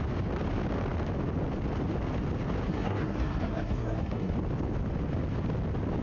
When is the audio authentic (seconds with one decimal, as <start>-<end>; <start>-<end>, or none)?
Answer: 0.0-2.7; 4.3-6.0